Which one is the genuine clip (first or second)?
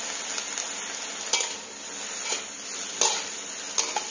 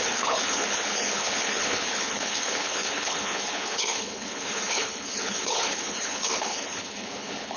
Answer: first